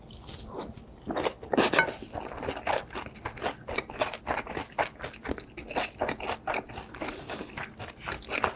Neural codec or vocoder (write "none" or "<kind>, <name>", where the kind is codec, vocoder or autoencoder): none